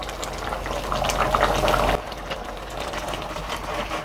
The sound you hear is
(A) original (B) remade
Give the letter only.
A